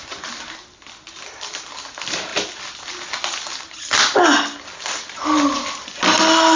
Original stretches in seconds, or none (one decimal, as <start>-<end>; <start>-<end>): 0.0-6.6